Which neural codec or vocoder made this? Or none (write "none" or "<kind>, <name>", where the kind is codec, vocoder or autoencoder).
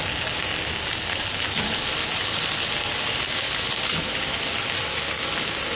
none